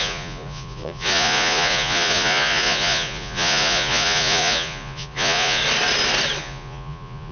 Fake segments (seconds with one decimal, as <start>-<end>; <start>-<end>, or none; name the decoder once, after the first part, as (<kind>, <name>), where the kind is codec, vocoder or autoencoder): 0.0-5.6 (vocoder, Vocos); 6.4-7.3